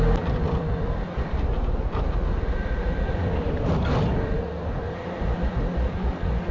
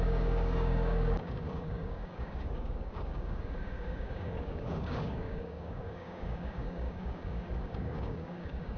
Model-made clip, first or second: second